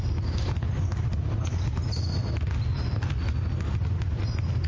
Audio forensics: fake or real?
real